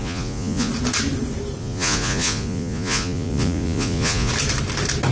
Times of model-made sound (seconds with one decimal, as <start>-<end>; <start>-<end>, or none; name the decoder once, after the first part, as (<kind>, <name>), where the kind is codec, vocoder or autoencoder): 0.0-0.7 (vocoder, Vocos); 1.6-4.3